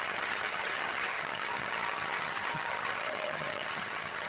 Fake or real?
fake